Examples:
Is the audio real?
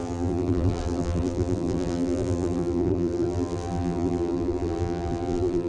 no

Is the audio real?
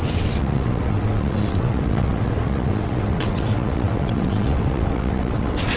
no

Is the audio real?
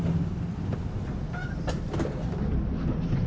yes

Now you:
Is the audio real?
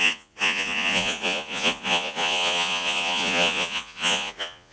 no